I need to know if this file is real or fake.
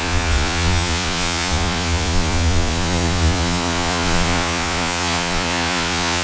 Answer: fake